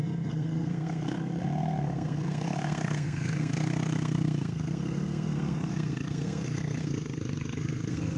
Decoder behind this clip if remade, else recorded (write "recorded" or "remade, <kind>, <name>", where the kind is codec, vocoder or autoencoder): remade, codec, SNAC